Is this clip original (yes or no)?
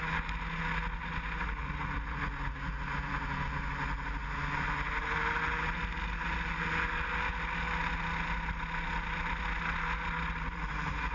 yes